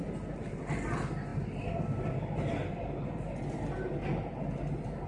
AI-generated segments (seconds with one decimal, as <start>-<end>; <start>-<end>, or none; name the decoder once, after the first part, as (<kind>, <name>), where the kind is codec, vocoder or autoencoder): none

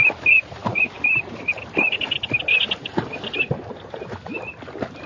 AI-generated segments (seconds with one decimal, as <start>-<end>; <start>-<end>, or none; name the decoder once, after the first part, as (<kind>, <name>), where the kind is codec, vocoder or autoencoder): 0.6-3.7 (vocoder, BigVGAN v2)

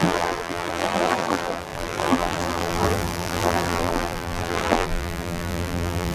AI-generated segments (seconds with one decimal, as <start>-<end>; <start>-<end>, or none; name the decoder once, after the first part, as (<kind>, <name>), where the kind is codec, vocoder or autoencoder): 0.0-6.1 (vocoder, BigVGAN v2)

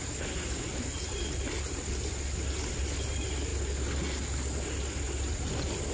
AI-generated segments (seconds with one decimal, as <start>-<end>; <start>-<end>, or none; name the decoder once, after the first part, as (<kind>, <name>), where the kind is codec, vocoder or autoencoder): none

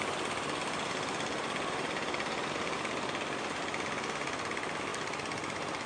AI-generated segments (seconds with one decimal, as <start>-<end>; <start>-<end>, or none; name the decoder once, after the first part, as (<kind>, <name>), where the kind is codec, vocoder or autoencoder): 4.9-5.9 (vocoder, BigVGAN v2)

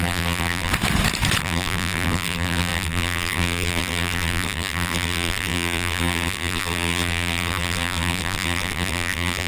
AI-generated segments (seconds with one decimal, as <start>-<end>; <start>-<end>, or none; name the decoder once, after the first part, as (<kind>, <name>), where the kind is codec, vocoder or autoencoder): 0.0-0.7 (vocoder, BigVGAN v2); 1.4-9.5